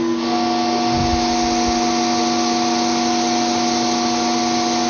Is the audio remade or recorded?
recorded